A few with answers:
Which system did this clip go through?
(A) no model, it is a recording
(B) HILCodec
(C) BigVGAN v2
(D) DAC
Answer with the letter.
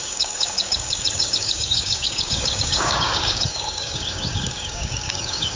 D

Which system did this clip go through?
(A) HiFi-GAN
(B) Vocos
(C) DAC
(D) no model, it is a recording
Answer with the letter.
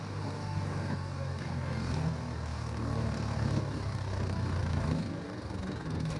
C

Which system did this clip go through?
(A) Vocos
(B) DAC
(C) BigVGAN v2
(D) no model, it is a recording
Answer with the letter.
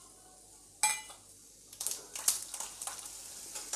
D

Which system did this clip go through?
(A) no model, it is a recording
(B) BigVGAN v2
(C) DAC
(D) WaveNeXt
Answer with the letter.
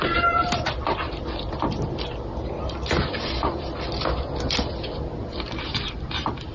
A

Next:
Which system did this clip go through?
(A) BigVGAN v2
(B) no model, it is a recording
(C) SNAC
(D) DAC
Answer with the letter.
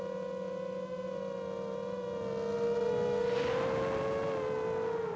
B